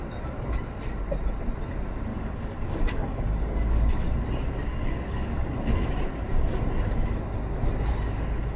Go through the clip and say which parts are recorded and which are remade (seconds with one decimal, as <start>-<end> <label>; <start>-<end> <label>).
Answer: 0.0-2.1 recorded; 2.1-3.9 remade; 3.9-4.7 recorded; 4.7-5.9 remade; 5.9-8.6 recorded